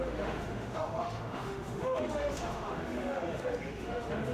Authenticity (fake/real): fake